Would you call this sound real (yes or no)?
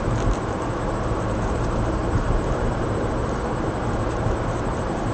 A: no